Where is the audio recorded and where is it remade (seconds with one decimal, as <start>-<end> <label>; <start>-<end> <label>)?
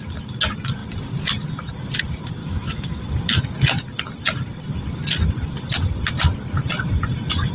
0.0-2.4 recorded; 2.4-3.0 remade; 3.0-7.5 recorded